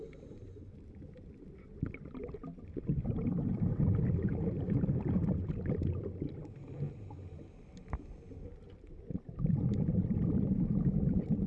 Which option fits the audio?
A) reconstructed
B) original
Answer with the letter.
B